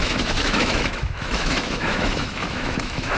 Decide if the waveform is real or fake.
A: fake